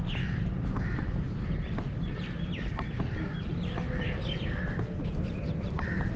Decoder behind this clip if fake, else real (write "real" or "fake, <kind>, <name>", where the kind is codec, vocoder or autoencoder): real